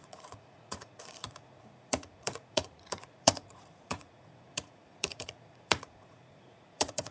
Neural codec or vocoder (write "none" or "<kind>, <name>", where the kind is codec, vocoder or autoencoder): vocoder, Vocos